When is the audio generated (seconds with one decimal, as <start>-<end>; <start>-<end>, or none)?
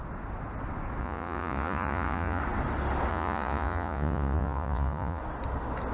1.0-2.4; 3.1-5.2